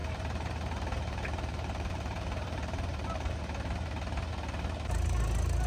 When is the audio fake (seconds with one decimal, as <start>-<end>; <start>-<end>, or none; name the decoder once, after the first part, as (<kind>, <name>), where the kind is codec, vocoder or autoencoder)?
0.0-3.4 (vocoder, BigVGAN v2)